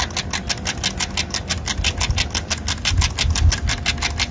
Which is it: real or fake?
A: real